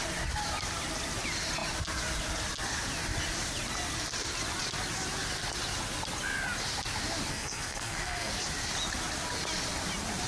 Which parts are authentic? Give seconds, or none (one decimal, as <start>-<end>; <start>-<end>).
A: 0.0-7.3; 8.3-10.3